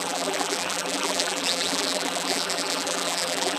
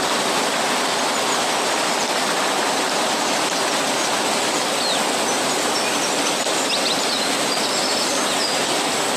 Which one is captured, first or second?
second